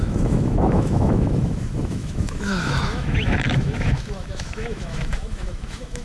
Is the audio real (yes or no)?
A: no